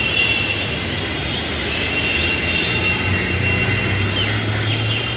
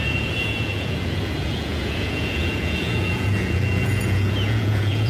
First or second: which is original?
first